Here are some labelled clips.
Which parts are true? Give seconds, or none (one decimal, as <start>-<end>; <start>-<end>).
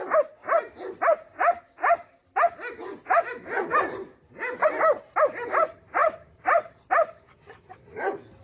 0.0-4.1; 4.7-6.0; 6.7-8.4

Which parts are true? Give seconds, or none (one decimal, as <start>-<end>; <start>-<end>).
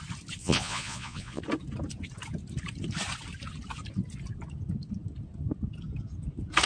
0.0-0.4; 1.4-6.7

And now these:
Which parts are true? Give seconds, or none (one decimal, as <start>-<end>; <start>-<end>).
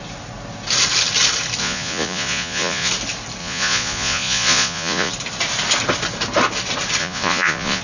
0.0-1.6; 2.9-3.4; 5.1-7.0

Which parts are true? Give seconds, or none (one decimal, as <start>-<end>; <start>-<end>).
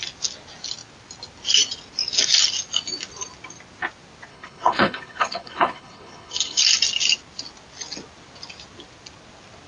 0.0-4.3; 6.6-9.7